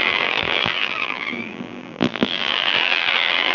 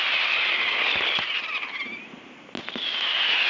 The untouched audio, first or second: second